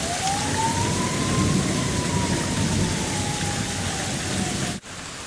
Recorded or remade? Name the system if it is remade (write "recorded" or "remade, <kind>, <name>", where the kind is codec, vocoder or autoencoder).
recorded